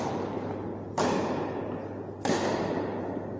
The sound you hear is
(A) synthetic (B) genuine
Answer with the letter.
B